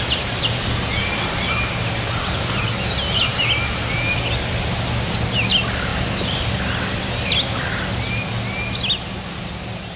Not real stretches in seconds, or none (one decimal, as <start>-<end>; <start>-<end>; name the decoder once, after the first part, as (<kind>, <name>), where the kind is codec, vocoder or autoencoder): none